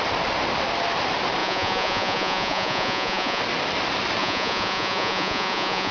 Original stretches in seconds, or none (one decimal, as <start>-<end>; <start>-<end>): 0.0-1.4; 3.4-4.2